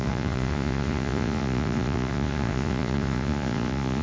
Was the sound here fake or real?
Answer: fake